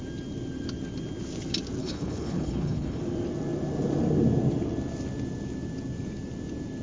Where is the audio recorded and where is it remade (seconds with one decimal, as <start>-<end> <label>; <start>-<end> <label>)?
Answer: 0.0-1.8 recorded; 1.8-3.0 remade; 3.0-6.8 recorded